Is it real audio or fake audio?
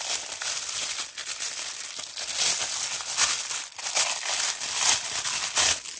real